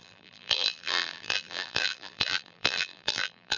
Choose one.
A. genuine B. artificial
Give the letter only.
B